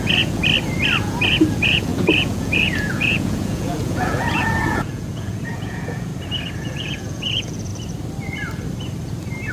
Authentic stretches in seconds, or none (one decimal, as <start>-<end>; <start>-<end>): 0.4-1.0; 6.1-6.6; 7.7-9.5